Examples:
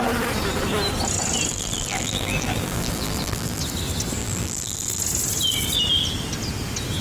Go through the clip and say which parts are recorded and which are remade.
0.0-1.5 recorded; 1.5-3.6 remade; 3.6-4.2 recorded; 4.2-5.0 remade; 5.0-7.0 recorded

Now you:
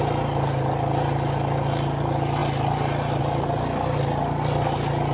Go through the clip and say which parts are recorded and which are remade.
0.0-5.1 recorded

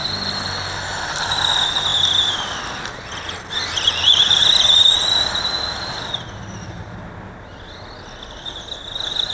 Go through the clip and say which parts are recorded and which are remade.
0.0-9.3 recorded